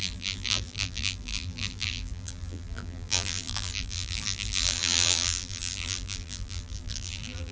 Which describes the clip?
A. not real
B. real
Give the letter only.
A